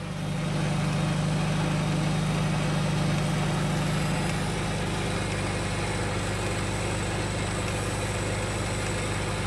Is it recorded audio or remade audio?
recorded